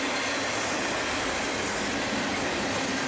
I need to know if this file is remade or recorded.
recorded